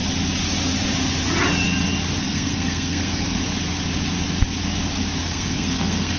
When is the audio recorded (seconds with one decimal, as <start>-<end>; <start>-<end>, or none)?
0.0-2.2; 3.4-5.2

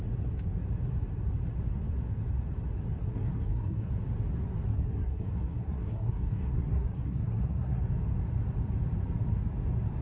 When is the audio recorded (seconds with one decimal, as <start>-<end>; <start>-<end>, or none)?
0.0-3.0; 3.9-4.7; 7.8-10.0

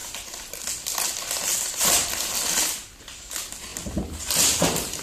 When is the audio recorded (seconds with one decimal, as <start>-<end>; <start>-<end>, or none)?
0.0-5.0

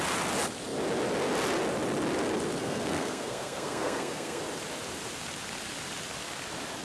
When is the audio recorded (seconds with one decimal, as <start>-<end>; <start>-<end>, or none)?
0.0-2.6; 4.4-6.8

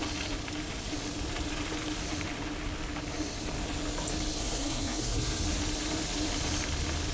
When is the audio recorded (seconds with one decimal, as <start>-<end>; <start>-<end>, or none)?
0.0-4.4; 5.4-7.1

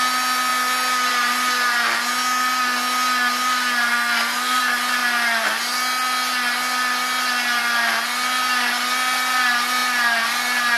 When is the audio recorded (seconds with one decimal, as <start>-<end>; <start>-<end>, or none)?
0.0-3.9; 4.6-10.8

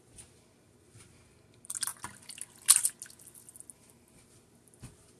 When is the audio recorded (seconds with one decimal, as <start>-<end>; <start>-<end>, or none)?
0.0-5.2

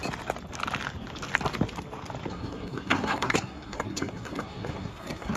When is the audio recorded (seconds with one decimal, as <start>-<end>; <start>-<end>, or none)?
0.0-2.3